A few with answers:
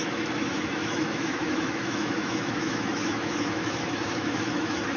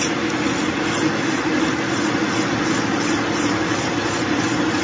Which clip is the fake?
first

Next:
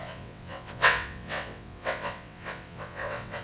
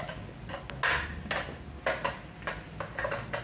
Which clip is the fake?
first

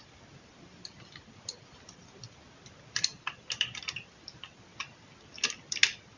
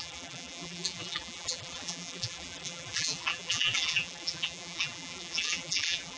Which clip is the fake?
second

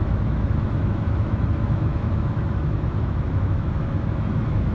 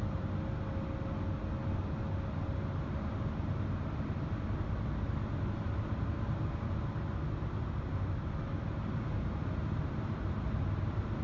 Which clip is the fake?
first